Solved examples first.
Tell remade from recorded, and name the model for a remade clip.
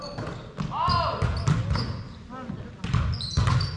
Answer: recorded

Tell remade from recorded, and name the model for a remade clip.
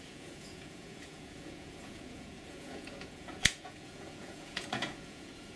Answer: remade, vocoder, Vocos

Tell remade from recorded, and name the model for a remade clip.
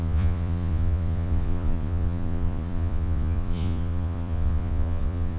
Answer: remade, vocoder, Vocos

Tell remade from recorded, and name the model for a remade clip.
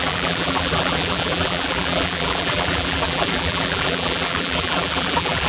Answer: remade, vocoder, BigVGAN v2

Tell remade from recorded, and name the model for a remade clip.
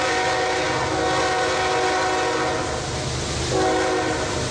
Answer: recorded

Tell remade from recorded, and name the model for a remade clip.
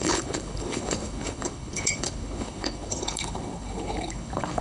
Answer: remade, codec, HILCodec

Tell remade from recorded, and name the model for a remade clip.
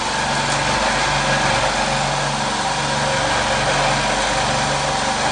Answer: recorded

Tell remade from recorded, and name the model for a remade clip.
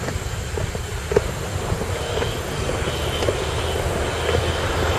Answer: recorded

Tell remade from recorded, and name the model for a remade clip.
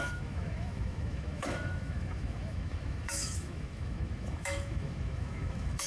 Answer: remade, autoencoder, DAC-VAE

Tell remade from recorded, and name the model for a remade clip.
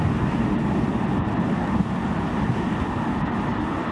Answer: recorded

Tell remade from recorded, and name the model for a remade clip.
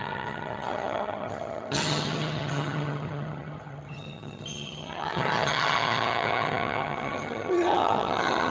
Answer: remade, vocoder, HiFi-GAN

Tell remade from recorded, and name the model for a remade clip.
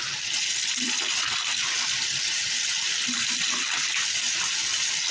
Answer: recorded